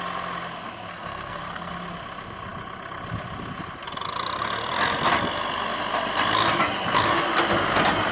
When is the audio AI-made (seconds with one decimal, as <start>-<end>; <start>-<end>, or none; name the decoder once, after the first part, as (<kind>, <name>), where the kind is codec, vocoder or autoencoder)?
0.9-1.7 (codec, SNAC)

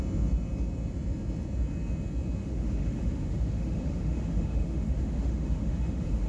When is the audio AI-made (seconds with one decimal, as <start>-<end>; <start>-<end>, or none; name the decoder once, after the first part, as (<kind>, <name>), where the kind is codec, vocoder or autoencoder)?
2.4-6.3 (autoencoder, DAC-VAE)

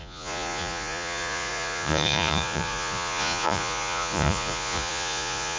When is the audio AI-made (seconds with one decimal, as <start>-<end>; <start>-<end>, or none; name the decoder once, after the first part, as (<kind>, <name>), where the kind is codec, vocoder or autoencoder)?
0.0-5.6 (vocoder, Vocos)